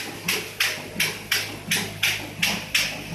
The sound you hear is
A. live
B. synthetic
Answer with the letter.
A